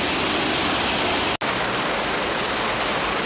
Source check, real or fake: real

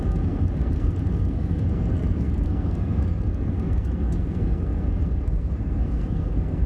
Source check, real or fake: fake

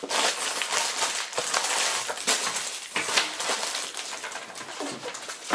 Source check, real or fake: real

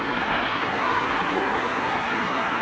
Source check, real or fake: fake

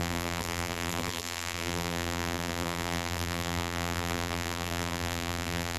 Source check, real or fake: fake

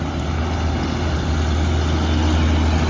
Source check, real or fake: real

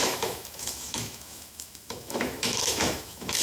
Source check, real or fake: fake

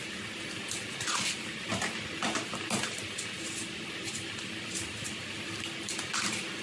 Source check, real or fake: real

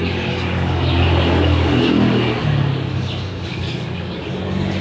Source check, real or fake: fake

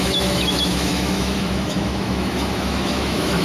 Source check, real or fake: fake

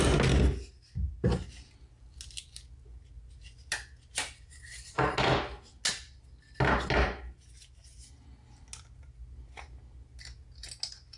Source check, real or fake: real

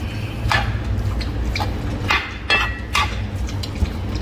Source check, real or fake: real